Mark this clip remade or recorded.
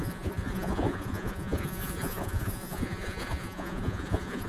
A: remade